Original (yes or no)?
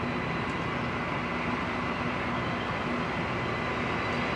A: yes